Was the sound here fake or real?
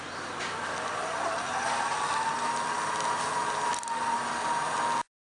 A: real